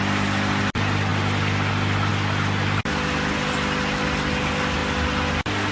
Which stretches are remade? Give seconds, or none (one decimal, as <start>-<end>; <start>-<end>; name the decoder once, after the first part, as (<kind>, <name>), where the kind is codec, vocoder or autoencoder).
none